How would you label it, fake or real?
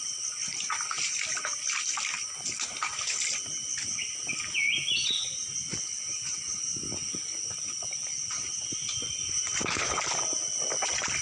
real